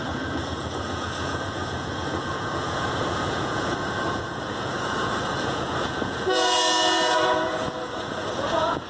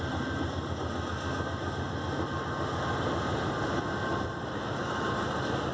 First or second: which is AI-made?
first